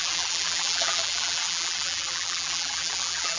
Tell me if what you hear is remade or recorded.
remade